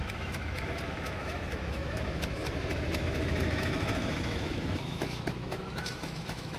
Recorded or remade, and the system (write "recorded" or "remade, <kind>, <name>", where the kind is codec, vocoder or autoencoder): remade, autoencoder, DAC-VAE